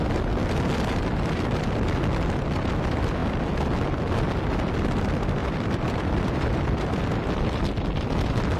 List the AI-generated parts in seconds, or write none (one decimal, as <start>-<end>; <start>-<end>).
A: 5.4-7.6